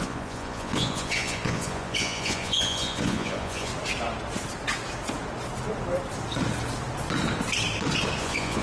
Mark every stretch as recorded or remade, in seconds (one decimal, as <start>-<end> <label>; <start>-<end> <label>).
0.0-3.7 remade; 3.7-8.2 recorded; 8.2-8.6 remade